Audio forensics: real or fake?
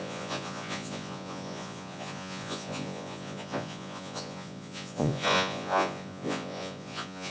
fake